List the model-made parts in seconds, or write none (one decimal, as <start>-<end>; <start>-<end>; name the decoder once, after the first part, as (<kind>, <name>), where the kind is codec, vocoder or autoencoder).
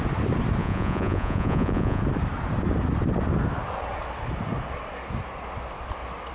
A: 0.6-2.0 (vocoder, Vocos)